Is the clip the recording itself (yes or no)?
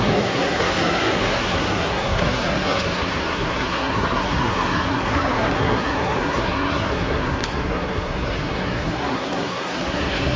no